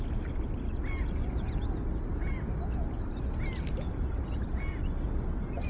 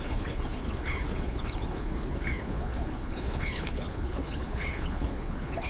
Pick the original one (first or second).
first